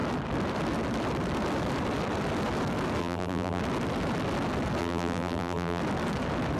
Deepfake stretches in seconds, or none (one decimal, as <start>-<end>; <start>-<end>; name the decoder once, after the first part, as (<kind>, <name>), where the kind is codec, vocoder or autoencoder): 3.0-3.6 (vocoder, BigVGAN v2); 4.8-5.8